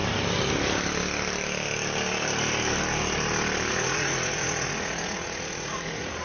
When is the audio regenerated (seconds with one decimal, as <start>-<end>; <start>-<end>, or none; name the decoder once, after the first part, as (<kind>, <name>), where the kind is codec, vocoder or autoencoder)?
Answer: 3.7-6.2 (vocoder, Vocos)